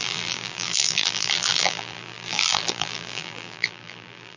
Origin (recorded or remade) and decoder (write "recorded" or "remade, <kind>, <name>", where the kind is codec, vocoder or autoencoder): remade, vocoder, BigVGAN v2